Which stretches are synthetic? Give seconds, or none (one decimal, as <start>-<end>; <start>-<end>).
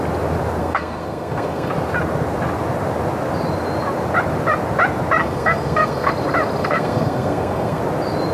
0.6-1.7; 5.2-6.1; 6.6-7.8